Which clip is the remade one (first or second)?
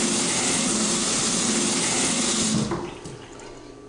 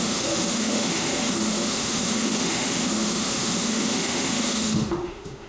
second